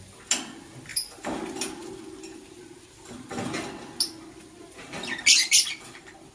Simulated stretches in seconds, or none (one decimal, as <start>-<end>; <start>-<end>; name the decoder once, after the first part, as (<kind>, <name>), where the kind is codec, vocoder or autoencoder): none

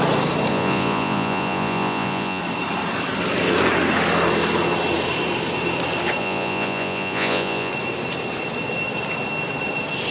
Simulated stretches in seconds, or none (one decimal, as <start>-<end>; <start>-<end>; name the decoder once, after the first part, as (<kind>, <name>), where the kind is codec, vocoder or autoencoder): 0.5-2.4 (vocoder, Vocos); 6.2-7.7

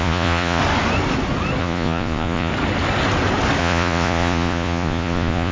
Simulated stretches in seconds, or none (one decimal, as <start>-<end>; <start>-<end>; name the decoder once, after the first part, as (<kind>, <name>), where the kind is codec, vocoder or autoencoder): 0.0-0.6 (vocoder, Vocos); 1.6-2.5; 3.6-5.5

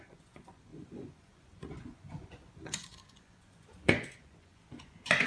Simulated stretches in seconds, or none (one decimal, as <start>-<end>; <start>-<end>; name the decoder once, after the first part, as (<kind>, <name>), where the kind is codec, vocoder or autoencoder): 0.0-5.3 (vocoder, Vocos)